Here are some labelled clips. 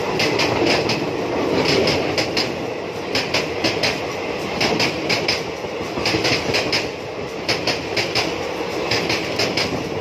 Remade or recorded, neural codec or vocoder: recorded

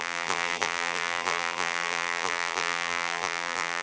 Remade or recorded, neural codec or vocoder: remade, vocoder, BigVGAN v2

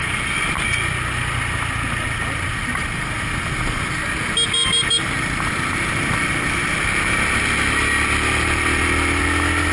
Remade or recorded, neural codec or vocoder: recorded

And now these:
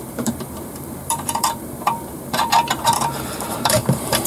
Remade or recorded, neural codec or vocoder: remade, vocoder, BigVGAN v2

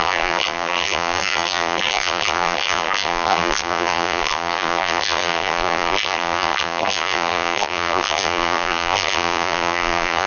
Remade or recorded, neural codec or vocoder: remade, vocoder, BigVGAN v2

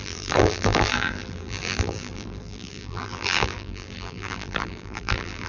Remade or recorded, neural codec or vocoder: remade, vocoder, BigVGAN v2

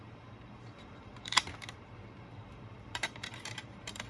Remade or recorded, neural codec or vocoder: remade, vocoder, BigVGAN v2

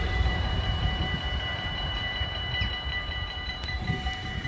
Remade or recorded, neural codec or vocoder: remade, vocoder, BigVGAN v2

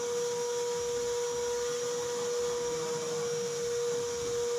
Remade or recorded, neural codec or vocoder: recorded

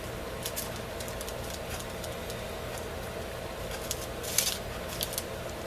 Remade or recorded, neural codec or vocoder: recorded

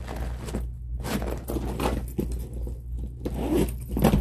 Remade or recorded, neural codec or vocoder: recorded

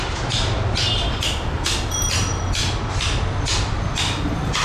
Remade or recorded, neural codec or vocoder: recorded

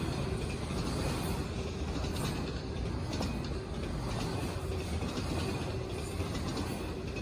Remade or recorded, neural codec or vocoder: recorded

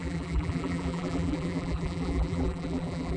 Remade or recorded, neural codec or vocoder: remade, vocoder, BigVGAN v2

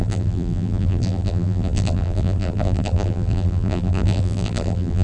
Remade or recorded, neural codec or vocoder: remade, vocoder, BigVGAN v2